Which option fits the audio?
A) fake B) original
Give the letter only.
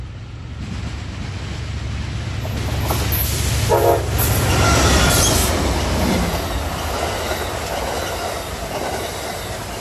B